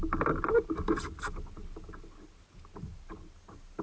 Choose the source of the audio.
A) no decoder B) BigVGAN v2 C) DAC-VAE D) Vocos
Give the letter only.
A